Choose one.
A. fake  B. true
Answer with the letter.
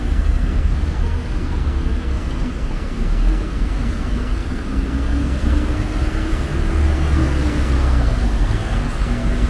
A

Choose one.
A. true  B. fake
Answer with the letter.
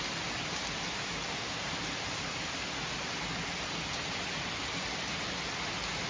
A